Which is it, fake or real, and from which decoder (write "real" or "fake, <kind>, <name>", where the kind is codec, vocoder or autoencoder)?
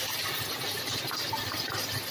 real